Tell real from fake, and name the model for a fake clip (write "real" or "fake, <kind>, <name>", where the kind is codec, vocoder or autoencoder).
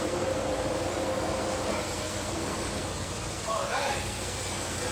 fake, codec, SNAC